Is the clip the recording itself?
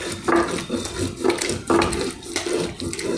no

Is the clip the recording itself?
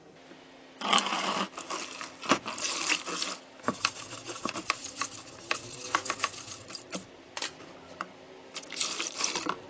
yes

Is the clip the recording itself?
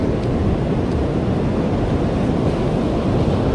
yes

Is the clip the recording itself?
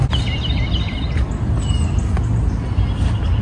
yes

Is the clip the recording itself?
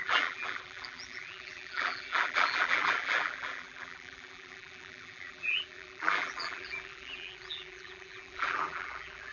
no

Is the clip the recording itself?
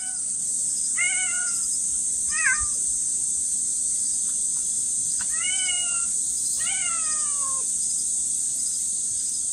no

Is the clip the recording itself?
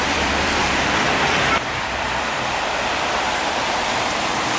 no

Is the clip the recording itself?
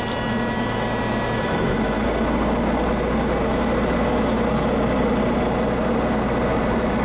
yes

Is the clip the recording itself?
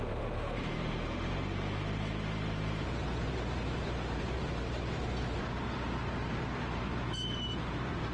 no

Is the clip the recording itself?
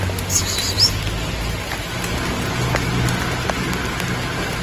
yes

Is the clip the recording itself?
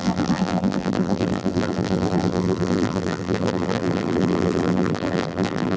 no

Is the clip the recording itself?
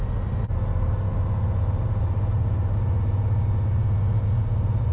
yes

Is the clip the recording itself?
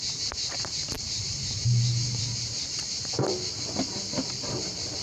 no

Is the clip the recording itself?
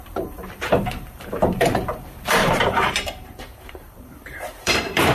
no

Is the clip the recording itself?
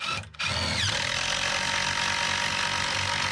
yes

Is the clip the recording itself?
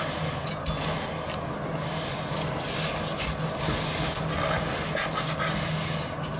yes